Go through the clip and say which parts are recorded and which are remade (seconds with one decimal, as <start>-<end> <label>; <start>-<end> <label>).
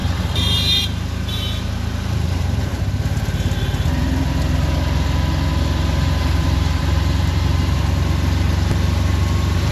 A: 0.0-2.8 remade; 2.8-5.5 recorded; 5.5-7.8 remade; 7.8-9.7 recorded